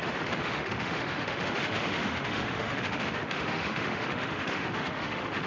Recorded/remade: remade